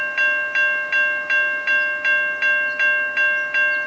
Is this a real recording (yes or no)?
yes